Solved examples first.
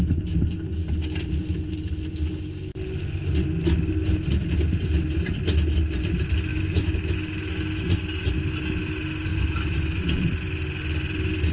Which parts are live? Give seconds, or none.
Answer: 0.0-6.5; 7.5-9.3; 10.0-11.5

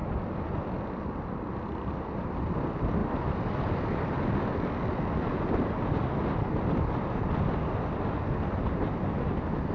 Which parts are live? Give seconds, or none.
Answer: 0.0-9.7

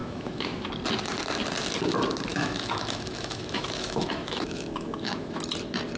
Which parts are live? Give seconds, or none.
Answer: 0.7-2.3; 5.4-6.0

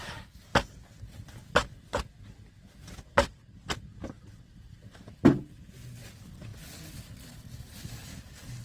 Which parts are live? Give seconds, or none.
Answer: 0.0-8.6

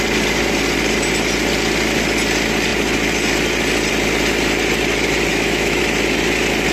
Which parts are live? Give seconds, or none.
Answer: 0.0-5.3; 5.8-6.7

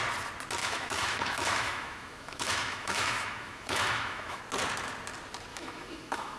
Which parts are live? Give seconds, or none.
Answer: 0.0-0.6; 4.4-5.5